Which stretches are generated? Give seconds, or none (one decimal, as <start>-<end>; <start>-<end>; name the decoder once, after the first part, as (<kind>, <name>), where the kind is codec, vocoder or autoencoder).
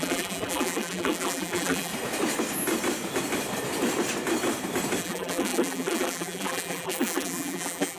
0.0-1.9 (vocoder, BigVGAN v2); 5.0-8.0